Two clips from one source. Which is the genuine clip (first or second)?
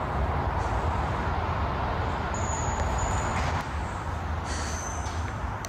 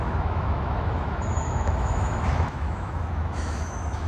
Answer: first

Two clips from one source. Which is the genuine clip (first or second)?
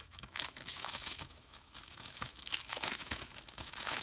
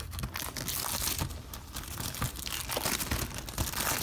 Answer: second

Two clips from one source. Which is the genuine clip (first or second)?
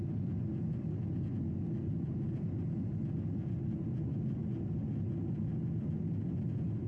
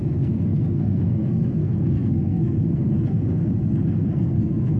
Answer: first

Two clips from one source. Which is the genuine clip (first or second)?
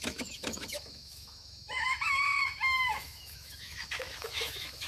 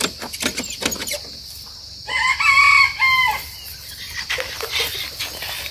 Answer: second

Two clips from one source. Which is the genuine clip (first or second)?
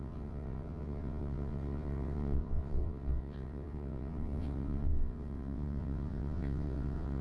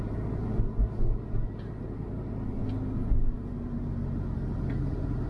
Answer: second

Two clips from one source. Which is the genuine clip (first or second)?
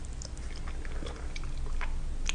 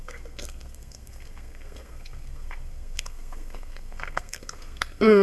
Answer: first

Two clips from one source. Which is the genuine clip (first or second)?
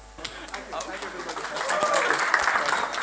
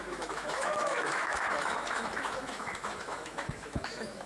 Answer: first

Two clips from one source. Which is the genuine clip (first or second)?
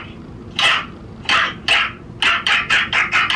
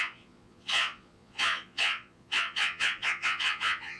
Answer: first